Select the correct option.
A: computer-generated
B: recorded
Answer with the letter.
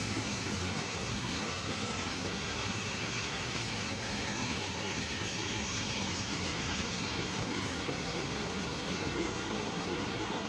A